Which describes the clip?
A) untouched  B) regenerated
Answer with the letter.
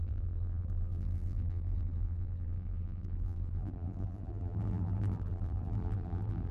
B